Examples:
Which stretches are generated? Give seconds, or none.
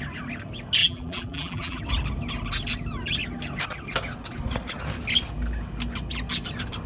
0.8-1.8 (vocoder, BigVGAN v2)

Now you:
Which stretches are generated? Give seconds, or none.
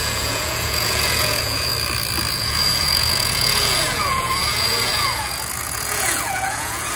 0.0-1.7 (vocoder, Vocos); 2.3-7.0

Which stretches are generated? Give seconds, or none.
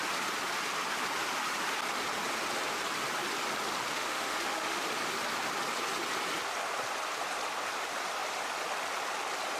3.9-4.8 (autoencoder, DAC-VAE)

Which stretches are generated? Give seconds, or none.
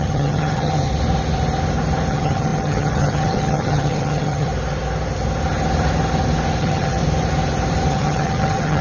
0.0-0.9 (vocoder, HiFi-GAN); 2.1-4.5; 6.6-7.0; 7.9-8.8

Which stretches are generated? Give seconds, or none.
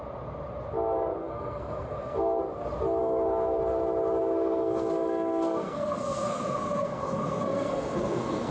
1.2-2.4 (codec, SNAC); 3.0-3.6; 4.2-8.5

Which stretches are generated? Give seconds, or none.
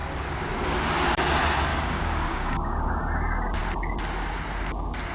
1.7-2.9 (codec, DAC)